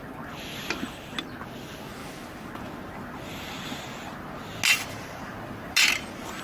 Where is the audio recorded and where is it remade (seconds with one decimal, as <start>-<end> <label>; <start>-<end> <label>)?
0.0-6.4 recorded